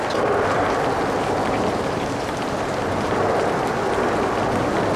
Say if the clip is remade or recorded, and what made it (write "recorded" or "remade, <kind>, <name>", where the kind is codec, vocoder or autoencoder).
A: recorded